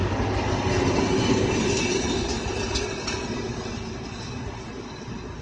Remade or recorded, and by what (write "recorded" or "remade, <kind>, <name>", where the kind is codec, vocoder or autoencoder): recorded